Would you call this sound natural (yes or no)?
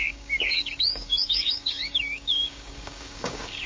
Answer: no